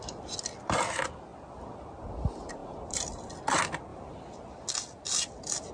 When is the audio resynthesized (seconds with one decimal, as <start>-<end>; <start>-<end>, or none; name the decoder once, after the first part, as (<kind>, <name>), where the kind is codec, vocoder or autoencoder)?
none